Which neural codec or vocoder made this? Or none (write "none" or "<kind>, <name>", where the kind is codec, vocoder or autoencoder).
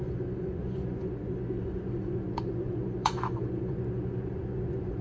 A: vocoder, Vocos